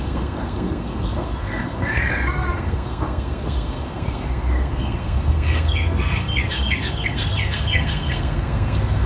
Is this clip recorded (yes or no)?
no